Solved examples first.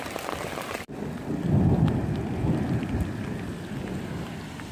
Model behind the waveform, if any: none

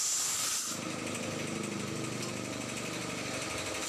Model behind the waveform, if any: none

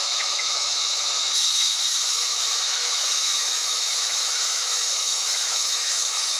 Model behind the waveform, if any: autoencoder, DAC-VAE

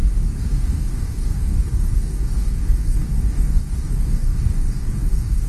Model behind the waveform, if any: codec, DAC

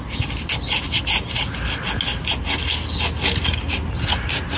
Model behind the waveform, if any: none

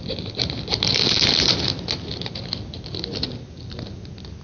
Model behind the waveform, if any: none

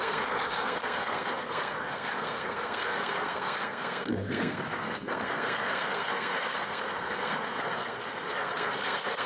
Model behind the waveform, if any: codec, SNAC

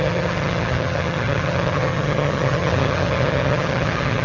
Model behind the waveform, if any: vocoder, HiFi-GAN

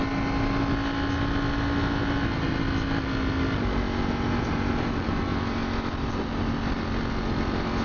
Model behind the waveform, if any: none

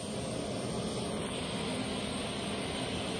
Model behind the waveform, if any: none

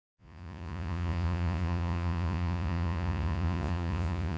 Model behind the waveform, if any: vocoder, Vocos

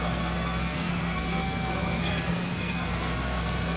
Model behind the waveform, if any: codec, SNAC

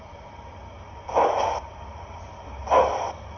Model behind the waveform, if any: none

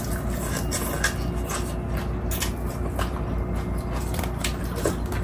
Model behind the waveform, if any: none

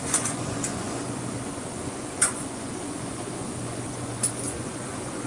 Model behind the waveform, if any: vocoder, Vocos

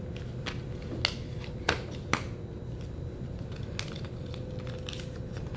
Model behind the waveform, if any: none